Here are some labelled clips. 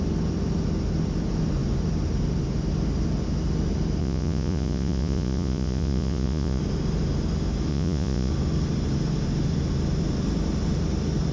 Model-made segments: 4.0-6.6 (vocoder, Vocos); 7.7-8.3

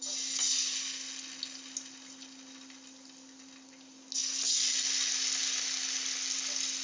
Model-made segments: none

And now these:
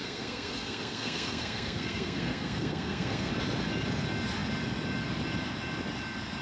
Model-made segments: 0.0-3.3 (codec, SNAC)

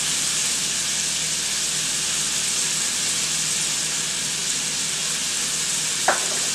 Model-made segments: none

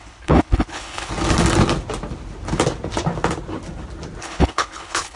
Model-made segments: 0.0-1.1 (codec, HILCodec); 4.2-5.2

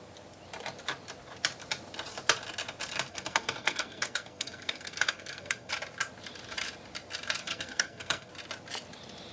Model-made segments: 3.1-5.7 (codec, SNAC); 7.4-8.3

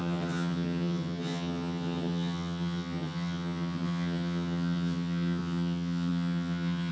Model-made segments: 0.0-6.9 (vocoder, HiFi-GAN)